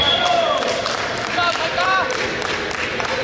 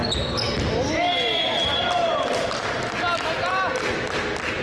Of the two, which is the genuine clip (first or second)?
second